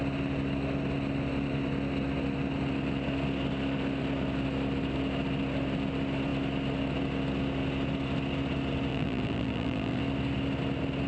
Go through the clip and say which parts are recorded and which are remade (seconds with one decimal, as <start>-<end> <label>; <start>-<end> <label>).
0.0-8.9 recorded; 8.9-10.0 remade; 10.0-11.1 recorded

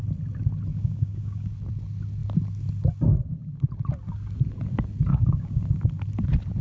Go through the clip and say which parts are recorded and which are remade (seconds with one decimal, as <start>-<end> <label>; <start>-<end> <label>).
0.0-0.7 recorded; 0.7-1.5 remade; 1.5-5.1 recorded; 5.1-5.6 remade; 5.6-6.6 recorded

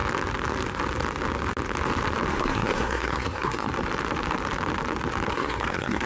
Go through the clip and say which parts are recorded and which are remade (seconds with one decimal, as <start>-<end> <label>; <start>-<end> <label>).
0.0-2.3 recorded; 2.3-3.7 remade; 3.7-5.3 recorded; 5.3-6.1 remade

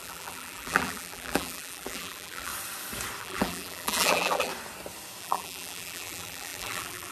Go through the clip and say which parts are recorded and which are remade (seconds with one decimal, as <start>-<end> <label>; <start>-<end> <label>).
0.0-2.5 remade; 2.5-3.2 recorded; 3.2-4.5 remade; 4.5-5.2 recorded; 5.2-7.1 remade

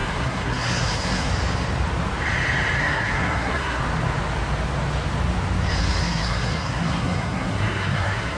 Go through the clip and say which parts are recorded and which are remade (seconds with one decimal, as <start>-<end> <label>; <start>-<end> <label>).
0.0-1.3 remade; 1.3-2.8 recorded; 2.8-3.8 remade; 3.8-5.8 recorded; 5.8-8.4 remade